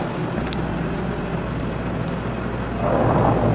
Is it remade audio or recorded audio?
recorded